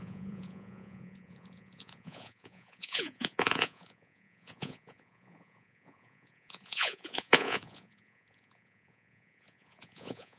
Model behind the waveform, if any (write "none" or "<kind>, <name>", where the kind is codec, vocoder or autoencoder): vocoder, Vocos